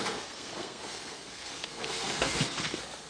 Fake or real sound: fake